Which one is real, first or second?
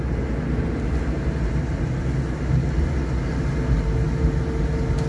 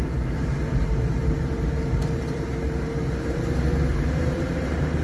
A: first